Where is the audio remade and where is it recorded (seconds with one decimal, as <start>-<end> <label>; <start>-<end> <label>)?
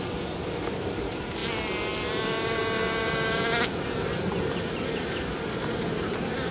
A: 0.0-6.5 recorded